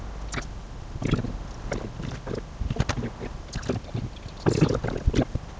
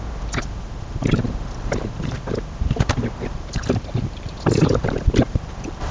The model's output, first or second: second